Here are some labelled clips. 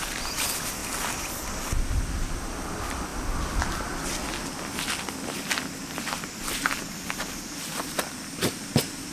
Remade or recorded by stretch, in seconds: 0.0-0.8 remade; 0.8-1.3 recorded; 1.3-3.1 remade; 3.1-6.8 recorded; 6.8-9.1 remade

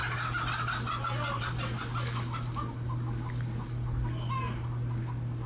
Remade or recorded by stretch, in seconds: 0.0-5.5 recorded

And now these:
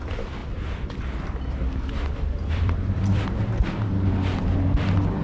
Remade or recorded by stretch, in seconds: 0.0-0.4 recorded; 0.4-3.5 remade; 3.5-5.2 recorded

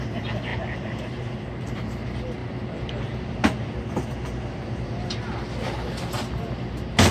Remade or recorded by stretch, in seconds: 0.0-0.5 recorded; 0.5-1.0 remade; 1.0-7.1 recorded

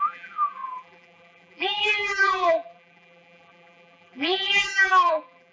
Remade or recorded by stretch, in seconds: 0.0-5.5 remade

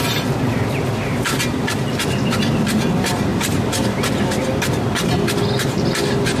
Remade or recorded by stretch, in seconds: 0.0-3.3 recorded; 3.3-4.1 remade; 4.1-6.4 recorded

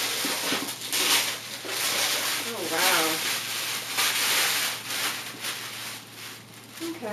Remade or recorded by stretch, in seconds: 0.0-2.3 recorded; 2.3-5.2 remade; 5.2-7.1 recorded

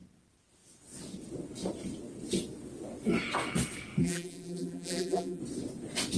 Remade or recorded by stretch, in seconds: 0.0-4.0 recorded; 4.0-5.4 remade; 5.4-6.2 recorded